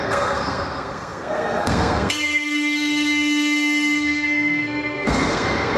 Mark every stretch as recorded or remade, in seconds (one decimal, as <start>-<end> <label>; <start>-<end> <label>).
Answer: 0.0-5.8 remade